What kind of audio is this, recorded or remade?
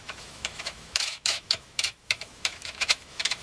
remade